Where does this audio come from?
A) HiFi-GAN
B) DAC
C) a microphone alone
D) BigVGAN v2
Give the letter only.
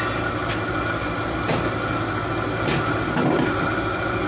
C